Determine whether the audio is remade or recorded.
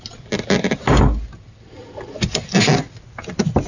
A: recorded